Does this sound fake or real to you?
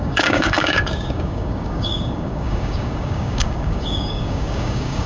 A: fake